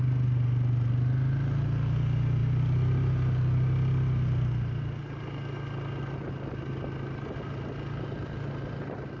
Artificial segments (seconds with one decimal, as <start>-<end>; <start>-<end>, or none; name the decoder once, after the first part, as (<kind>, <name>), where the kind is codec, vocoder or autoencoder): none